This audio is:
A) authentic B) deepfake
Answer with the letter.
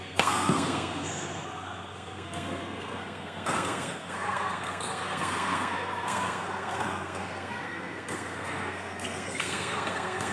B